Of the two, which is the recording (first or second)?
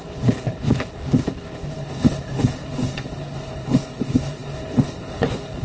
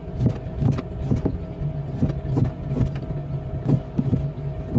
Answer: second